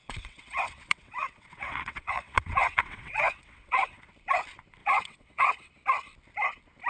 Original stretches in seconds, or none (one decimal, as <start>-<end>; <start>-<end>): 4.1-4.8; 5.7-6.9